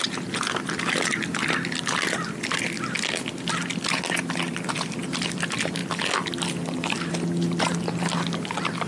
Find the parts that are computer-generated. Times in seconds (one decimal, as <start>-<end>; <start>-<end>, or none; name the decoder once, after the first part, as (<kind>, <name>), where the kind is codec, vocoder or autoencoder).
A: none